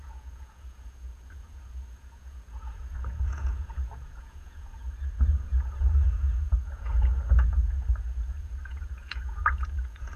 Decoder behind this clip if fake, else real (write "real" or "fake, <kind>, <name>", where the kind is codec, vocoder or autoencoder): fake, vocoder, Vocos